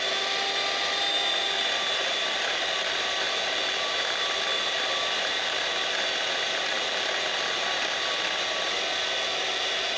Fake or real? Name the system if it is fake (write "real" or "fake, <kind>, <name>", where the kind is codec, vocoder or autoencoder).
real